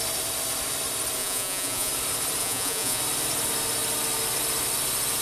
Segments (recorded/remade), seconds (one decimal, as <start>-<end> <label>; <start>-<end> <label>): 0.0-1.2 recorded; 1.2-1.9 remade; 1.9-2.4 recorded; 2.4-3.0 remade; 3.0-5.2 recorded